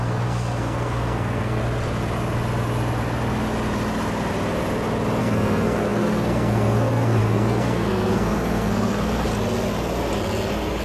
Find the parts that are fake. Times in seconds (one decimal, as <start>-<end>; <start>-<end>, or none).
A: 0.0-1.6; 5.2-9.3